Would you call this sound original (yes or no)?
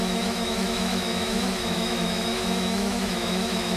no